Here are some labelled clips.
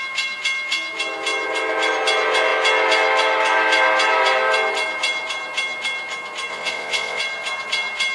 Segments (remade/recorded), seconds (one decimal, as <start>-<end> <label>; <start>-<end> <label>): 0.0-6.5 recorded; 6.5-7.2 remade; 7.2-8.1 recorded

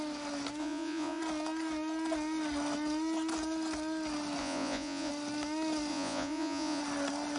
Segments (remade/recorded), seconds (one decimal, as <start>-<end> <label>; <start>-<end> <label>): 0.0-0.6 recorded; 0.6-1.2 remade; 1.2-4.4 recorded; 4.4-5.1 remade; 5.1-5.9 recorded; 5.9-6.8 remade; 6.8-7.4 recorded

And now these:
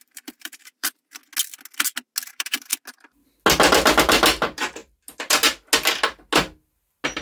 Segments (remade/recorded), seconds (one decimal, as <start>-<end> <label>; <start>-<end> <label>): 0.0-1.2 remade; 1.2-2.3 recorded; 2.3-2.7 remade; 2.7-4.0 recorded; 4.0-4.8 remade; 4.8-7.2 recorded

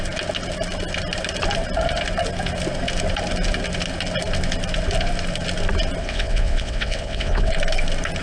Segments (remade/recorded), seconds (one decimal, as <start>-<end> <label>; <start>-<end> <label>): 0.0-6.0 recorded; 6.0-7.5 remade; 7.5-8.2 recorded

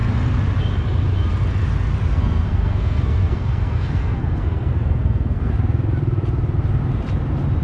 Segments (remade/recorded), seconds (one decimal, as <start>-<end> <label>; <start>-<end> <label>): 0.0-2.1 recorded; 2.1-5.5 remade; 5.5-7.6 recorded

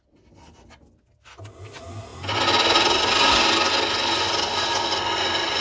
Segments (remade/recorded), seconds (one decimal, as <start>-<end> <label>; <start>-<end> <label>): 0.0-5.6 recorded

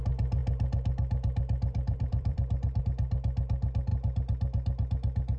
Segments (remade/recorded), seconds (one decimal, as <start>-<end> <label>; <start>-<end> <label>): 0.0-0.4 recorded; 0.4-2.8 remade; 2.8-5.4 recorded